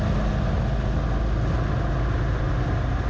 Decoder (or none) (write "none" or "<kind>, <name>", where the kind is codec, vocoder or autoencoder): none